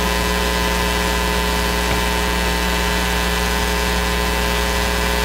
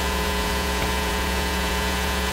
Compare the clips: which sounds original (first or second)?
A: first